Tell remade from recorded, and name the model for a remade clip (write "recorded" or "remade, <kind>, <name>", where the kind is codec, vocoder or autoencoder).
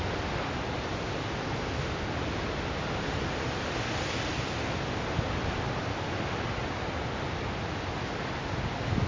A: recorded